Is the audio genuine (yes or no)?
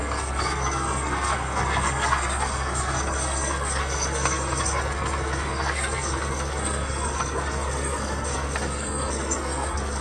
no